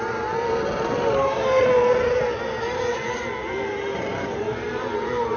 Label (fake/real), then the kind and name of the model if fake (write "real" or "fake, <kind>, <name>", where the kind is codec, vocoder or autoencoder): fake, vocoder, BigVGAN v2